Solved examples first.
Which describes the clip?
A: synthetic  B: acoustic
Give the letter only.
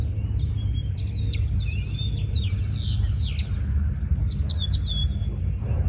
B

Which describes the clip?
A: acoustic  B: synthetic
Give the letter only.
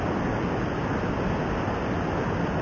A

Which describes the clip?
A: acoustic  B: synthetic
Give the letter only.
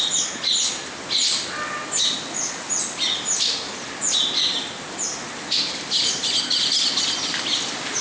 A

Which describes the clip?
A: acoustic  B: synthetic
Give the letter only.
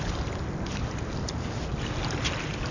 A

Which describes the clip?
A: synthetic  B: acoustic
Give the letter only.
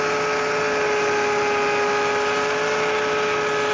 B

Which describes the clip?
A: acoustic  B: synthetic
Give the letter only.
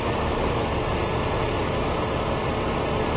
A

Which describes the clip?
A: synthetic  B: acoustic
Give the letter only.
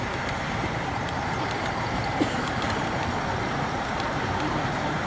A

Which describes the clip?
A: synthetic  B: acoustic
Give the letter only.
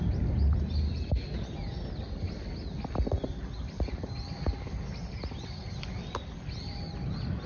B